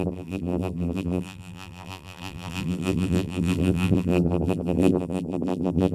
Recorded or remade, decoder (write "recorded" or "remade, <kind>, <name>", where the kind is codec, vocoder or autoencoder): remade, vocoder, BigVGAN v2